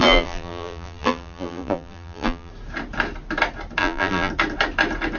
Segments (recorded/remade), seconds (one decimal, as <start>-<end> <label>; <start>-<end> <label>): 0.0-2.5 remade; 2.5-3.8 recorded; 3.8-4.3 remade; 4.3-5.2 recorded